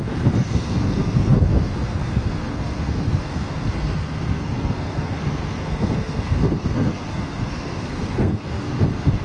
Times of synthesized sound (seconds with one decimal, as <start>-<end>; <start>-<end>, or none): 0.0-9.2